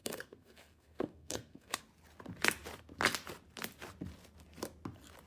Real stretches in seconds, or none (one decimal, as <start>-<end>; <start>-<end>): 1.8-5.3